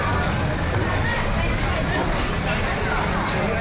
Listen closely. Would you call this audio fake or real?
fake